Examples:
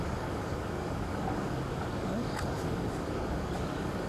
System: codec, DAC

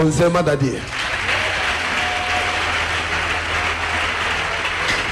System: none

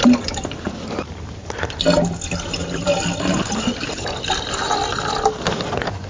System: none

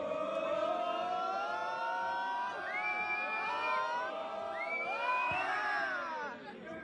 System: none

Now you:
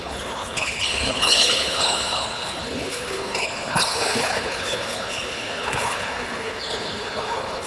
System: codec, HILCodec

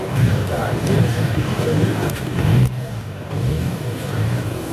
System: codec, DAC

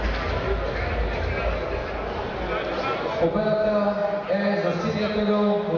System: none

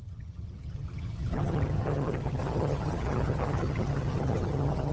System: vocoder, HiFi-GAN